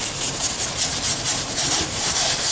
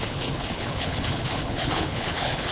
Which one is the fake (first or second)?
second